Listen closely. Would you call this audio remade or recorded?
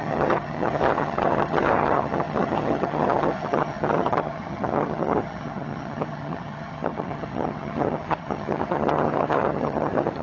remade